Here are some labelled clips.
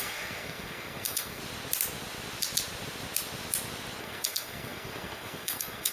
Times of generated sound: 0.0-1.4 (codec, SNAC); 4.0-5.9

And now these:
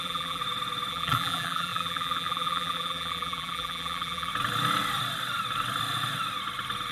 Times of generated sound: 0.0-0.4 (vocoder, BigVGAN v2); 0.9-4.3

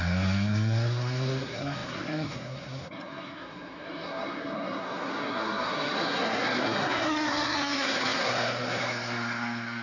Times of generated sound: 0.0-9.8 (codec, SNAC)

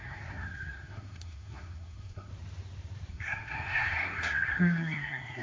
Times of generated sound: 0.0-2.3 (codec, SNAC); 3.1-5.4

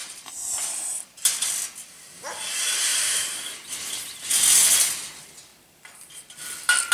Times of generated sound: 0.0-1.5 (vocoder, BigVGAN v2); 2.9-4.3